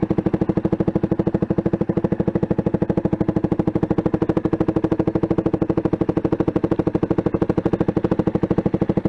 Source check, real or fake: real